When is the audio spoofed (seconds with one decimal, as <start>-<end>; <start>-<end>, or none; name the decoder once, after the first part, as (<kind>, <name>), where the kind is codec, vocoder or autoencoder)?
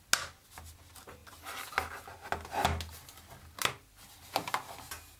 none